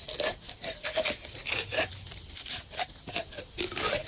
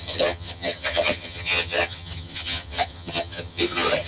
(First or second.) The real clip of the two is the first